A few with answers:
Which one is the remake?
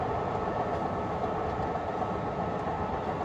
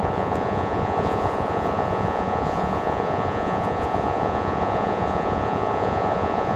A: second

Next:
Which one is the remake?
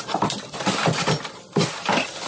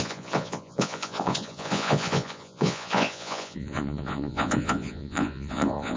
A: second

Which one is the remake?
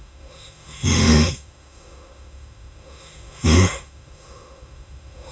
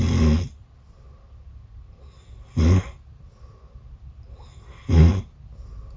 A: first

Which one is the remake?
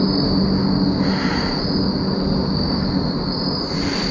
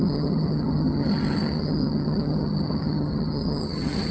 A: second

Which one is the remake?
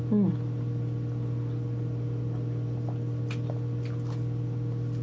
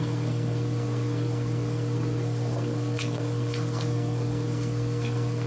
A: second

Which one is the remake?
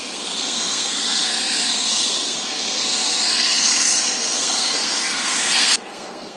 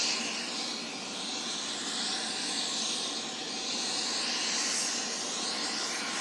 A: first